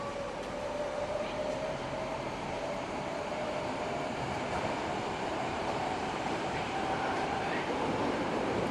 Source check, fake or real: fake